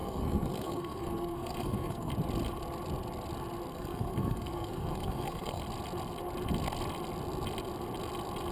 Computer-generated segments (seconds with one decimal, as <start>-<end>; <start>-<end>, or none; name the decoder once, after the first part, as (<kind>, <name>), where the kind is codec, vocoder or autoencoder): 0.0-2.1 (codec, SNAC); 3.7-5.6